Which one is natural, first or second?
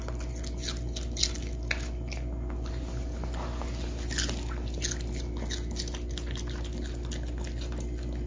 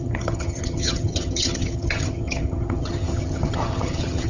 first